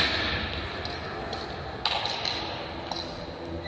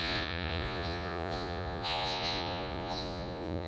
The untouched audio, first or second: first